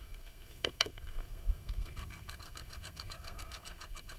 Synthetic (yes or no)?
yes